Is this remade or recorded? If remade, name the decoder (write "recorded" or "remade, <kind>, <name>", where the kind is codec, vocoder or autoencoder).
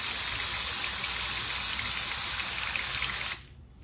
recorded